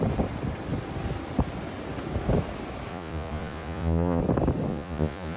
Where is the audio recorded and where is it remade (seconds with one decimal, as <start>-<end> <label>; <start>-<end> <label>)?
0.0-2.9 recorded; 2.9-4.2 remade; 4.2-4.7 recorded; 4.7-5.4 remade